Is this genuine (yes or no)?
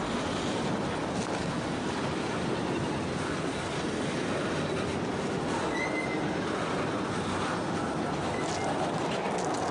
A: yes